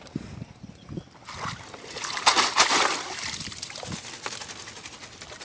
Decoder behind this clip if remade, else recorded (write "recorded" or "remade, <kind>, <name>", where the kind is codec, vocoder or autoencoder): recorded